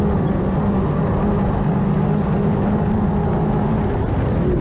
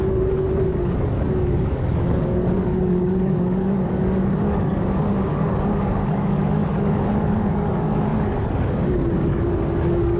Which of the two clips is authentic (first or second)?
first